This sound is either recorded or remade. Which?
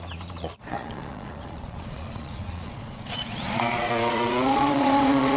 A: remade